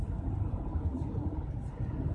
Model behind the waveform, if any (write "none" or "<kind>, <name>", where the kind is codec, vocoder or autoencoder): none